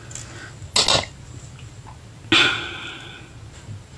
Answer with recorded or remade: recorded